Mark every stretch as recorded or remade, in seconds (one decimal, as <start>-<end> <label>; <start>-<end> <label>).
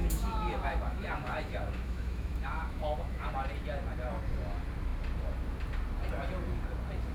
0.0-3.3 remade; 3.3-7.1 recorded